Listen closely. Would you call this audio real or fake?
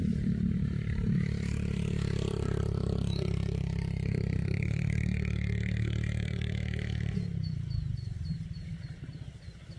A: fake